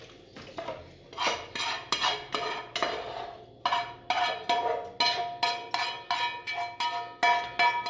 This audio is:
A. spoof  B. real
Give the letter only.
B